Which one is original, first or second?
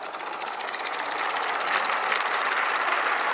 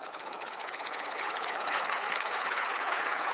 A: first